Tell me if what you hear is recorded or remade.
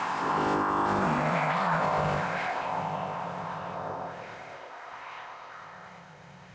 remade